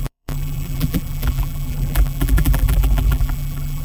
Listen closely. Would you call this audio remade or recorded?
remade